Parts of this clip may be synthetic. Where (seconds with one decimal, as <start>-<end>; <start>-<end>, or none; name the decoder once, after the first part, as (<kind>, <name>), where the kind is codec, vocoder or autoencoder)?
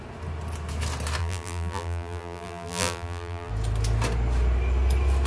1.2-3.5 (vocoder, BigVGAN v2)